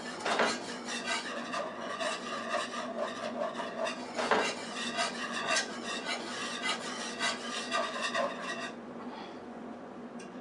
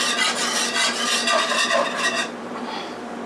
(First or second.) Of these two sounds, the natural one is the second